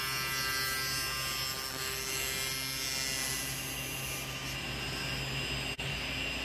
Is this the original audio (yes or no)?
yes